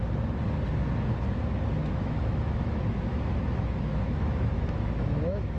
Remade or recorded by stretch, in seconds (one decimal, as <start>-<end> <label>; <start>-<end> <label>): 0.0-1.8 recorded; 1.8-5.6 remade